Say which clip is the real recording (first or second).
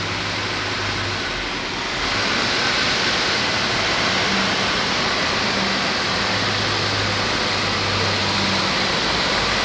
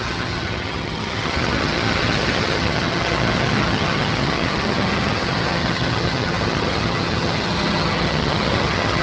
first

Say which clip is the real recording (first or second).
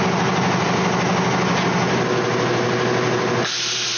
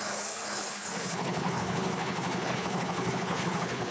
first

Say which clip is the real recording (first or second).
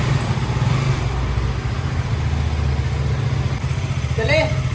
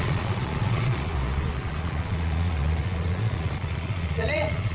first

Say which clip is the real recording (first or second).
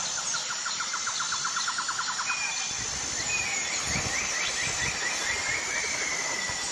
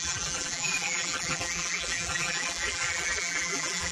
first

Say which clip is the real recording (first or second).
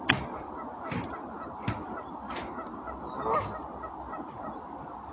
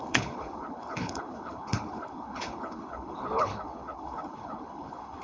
first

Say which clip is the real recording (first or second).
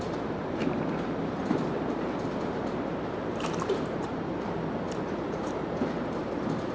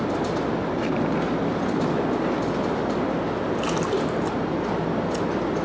second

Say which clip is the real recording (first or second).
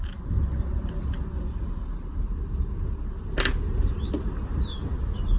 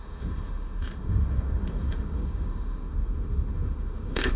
first